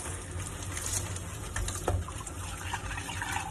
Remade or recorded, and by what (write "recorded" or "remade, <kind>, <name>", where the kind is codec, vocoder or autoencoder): recorded